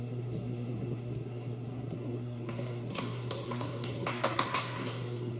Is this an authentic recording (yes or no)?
no